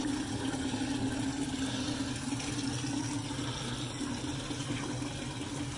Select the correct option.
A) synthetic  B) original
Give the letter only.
B